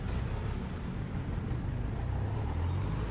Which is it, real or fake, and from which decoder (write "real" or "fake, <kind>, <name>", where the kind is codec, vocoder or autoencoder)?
real